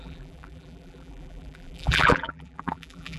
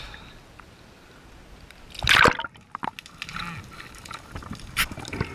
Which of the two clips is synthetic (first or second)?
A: first